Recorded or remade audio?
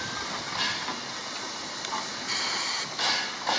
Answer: recorded